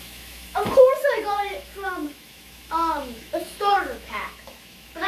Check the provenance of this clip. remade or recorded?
remade